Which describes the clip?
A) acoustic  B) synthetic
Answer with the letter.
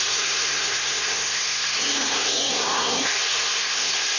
B